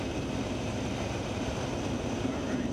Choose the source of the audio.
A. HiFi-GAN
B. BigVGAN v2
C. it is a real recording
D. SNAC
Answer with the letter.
C